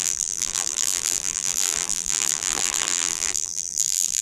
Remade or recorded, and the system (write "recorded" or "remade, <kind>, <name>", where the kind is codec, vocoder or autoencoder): remade, vocoder, BigVGAN v2